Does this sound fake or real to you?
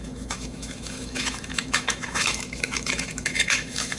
fake